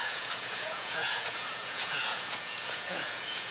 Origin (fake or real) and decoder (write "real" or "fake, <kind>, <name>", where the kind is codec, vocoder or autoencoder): fake, vocoder, Vocos